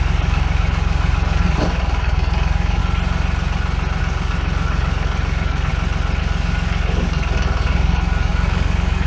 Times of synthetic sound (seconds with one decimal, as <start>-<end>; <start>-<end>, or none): 0.0-2.8; 4.0-5.7; 6.2-9.1